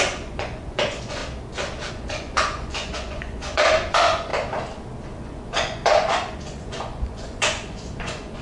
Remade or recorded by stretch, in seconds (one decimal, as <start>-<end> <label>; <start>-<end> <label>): 0.0-1.2 remade; 1.2-1.9 recorded; 1.9-4.3 remade; 4.3-5.2 recorded; 5.2-8.4 remade